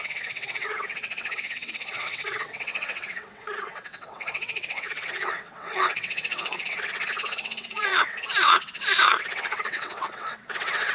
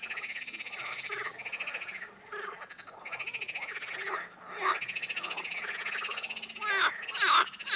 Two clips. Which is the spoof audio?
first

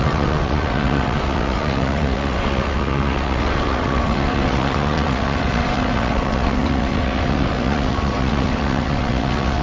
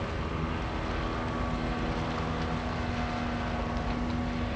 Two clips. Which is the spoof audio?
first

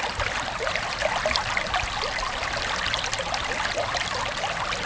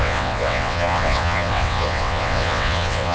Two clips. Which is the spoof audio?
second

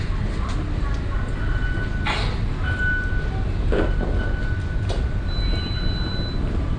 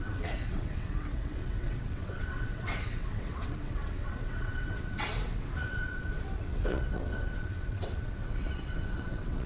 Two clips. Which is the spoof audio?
second